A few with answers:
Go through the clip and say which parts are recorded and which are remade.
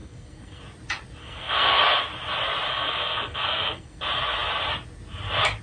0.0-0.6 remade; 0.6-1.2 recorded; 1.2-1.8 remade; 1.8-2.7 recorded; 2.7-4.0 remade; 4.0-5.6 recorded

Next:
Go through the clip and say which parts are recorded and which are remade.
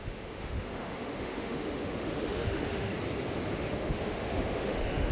0.0-2.9 remade; 2.9-3.5 recorded; 3.5-5.1 remade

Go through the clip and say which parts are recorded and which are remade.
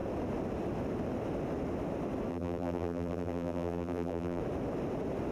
0.0-2.3 recorded; 2.3-4.4 remade; 4.4-5.3 recorded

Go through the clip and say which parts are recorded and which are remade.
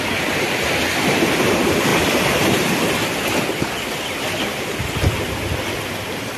0.0-6.4 recorded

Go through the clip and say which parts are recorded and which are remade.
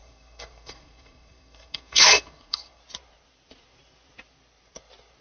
0.0-2.8 remade; 2.8-5.2 recorded